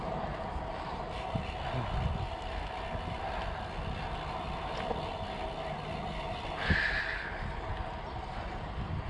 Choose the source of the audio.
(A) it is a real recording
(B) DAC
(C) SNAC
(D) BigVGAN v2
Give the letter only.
A